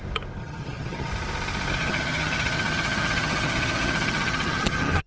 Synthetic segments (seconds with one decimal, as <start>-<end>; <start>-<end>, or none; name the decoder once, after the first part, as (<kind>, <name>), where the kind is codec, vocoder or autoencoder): 0.4-1.1 (vocoder, HiFi-GAN); 1.8-5.1